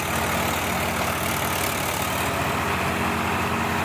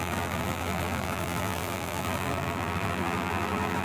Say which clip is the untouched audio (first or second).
first